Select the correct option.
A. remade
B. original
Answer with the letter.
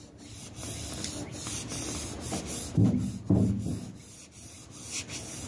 B